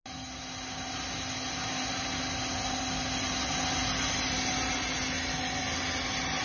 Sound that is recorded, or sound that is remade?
recorded